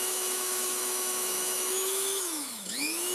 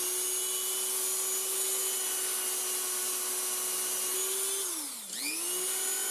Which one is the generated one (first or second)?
first